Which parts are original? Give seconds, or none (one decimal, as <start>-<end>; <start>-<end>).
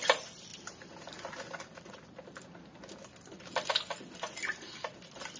0.0-5.4